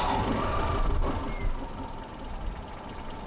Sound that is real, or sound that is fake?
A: real